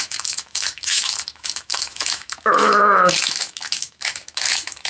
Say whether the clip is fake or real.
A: fake